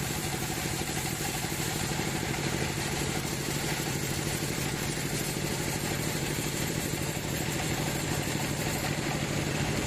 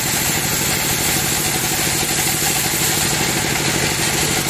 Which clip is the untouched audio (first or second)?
second